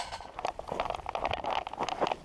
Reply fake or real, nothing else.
real